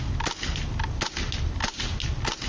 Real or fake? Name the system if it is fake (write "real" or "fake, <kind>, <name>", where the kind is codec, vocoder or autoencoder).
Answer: real